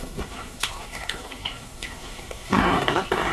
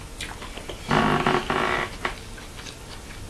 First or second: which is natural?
second